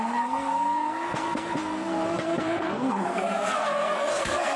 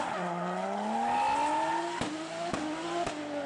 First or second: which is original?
second